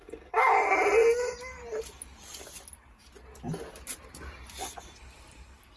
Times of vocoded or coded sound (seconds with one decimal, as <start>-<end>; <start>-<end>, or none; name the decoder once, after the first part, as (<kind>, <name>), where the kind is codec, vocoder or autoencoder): none